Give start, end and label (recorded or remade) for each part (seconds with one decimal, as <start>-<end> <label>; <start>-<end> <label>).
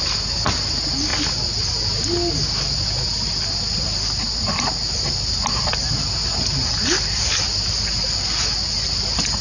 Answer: 0.0-9.4 recorded